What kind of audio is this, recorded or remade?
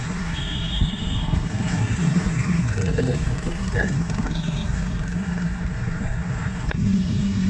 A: remade